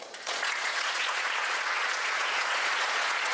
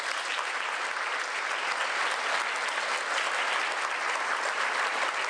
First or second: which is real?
second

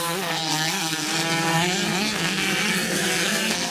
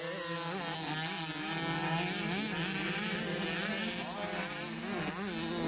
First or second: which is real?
second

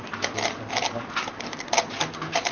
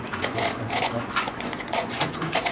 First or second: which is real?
first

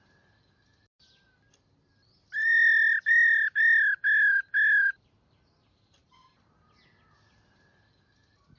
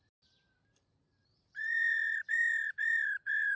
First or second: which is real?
first